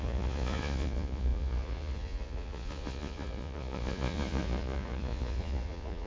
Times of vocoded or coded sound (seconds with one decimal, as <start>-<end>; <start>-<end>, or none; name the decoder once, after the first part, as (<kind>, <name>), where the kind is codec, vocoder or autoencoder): 0.0-6.1 (vocoder, Vocos)

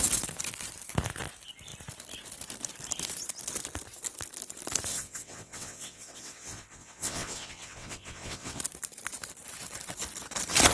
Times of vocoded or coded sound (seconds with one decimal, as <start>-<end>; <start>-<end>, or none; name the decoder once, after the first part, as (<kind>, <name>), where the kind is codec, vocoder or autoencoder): 4.9-8.6 (vocoder, WaveNeXt)

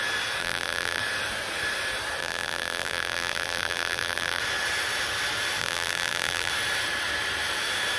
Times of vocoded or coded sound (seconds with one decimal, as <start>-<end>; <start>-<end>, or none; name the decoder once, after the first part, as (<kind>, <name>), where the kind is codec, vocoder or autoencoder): 0.4-1.0 (vocoder, BigVGAN v2); 2.2-4.4; 5.6-6.5

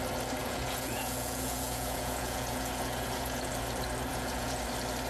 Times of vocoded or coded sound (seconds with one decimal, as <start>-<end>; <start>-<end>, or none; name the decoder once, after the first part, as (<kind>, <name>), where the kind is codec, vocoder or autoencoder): 0.4-3.5 (vocoder, Vocos); 4.1-4.6

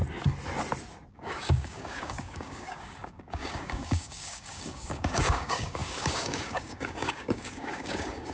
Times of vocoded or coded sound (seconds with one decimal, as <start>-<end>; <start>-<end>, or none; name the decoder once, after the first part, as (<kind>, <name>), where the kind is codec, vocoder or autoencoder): 1.1-8.3 (codec, DAC)

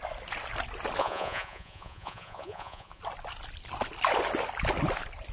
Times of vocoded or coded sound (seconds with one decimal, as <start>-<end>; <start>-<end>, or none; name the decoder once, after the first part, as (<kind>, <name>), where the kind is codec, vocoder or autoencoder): 1.0-3.0 (vocoder, Vocos)

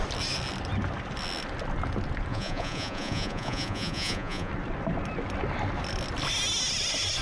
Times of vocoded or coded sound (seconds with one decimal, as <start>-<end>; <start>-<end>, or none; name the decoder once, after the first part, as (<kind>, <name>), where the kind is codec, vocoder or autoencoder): 2.3-4.5 (vocoder, Vocos)

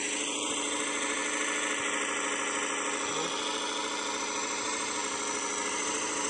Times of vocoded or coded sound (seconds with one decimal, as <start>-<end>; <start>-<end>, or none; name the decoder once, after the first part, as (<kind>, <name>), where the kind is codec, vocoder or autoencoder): 0.0-1.2 (vocoder, BigVGAN v2); 4.2-5.0; 5.7-6.3